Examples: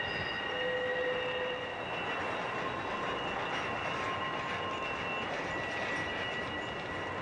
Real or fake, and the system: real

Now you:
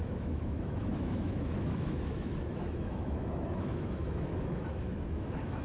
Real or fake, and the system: fake, autoencoder, DAC-VAE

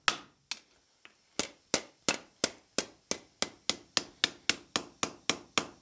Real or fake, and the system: real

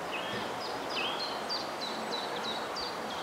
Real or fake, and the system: real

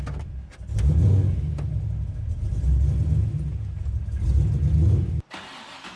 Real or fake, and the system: real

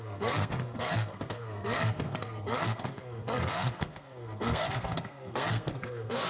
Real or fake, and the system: fake, codec, SNAC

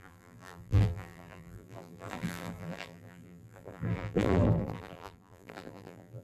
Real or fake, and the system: fake, vocoder, BigVGAN v2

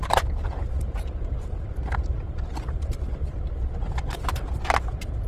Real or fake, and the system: fake, vocoder, BigVGAN v2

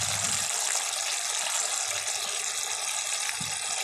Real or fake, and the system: real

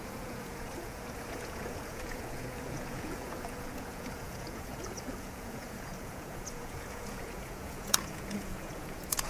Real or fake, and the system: fake, vocoder, Vocos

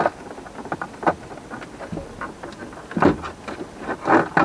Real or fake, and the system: real